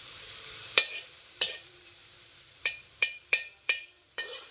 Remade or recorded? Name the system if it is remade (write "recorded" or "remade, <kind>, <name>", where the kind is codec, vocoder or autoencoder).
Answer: remade, vocoder, BigVGAN v2